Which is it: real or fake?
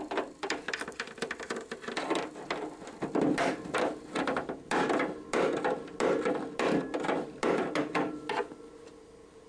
real